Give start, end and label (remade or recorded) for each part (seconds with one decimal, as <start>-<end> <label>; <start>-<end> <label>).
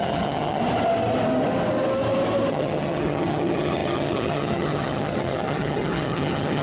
0.0-0.6 remade; 0.6-2.5 recorded; 2.5-6.6 remade